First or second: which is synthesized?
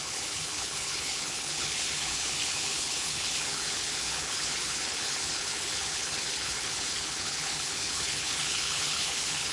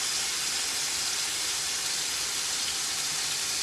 first